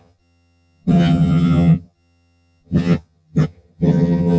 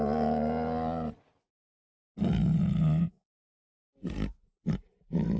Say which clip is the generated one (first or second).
first